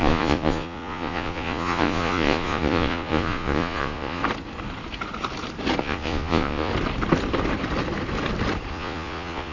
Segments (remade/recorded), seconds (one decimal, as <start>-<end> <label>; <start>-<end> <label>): 0.0-4.2 remade; 4.2-5.8 recorded; 5.8-6.7 remade; 6.7-8.7 recorded; 8.7-9.5 remade